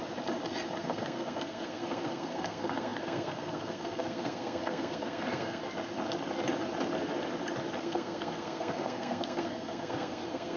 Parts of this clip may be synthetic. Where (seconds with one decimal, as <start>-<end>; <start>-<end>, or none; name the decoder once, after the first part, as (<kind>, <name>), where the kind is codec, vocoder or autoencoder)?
0.8-5.6 (codec, SNAC); 7.8-10.6